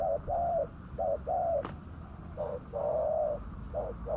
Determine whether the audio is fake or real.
fake